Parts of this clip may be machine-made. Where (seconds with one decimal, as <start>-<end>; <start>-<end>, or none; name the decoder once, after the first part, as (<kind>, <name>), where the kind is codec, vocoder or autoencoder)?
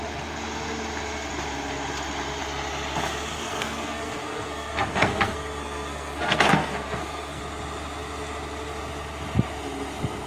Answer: 3.3-7.4 (codec, SNAC)